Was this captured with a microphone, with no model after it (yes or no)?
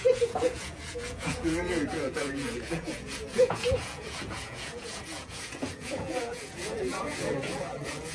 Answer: no